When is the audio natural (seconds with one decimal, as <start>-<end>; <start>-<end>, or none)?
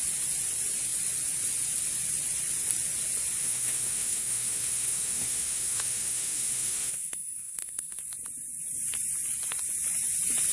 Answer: 0.0-3.4; 8.0-10.5